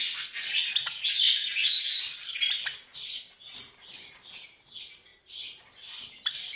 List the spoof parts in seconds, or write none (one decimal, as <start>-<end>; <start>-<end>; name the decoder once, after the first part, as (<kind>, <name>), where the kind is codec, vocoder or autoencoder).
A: 5.1-6.0 (vocoder, BigVGAN v2)